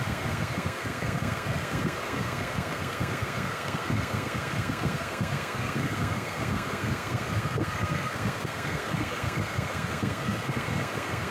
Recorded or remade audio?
remade